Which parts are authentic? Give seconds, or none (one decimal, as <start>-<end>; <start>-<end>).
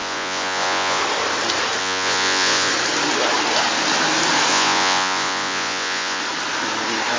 1.0-1.8; 2.7-4.5; 6.2-7.2